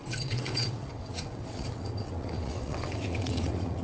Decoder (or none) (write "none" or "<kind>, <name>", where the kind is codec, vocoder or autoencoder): vocoder, WaveNeXt